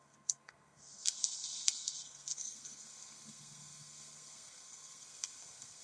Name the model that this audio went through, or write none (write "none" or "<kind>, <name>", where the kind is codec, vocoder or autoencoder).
codec, SNAC